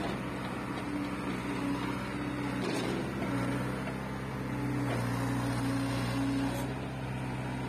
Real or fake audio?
real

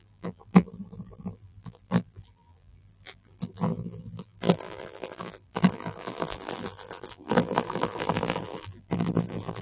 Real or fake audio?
fake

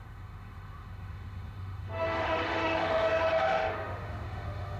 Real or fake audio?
fake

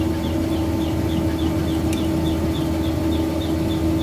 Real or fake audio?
real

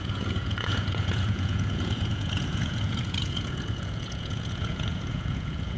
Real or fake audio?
fake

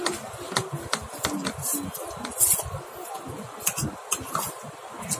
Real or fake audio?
fake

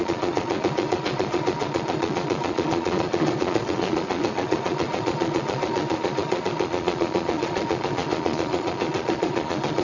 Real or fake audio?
fake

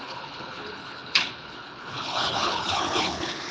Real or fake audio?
fake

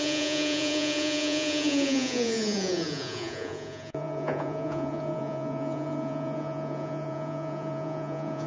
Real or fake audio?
fake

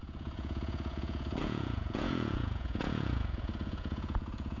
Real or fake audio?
fake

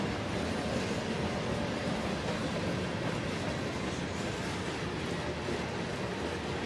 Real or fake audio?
real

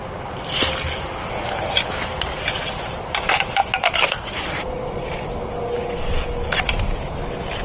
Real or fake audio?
real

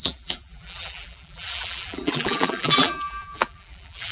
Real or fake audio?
fake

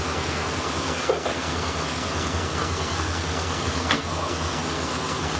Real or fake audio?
fake